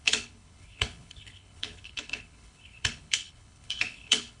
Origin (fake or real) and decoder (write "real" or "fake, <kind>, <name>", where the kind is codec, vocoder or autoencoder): fake, codec, HILCodec